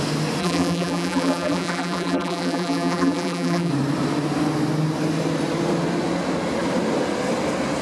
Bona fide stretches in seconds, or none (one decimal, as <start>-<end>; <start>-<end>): 0.0-0.4; 3.7-7.8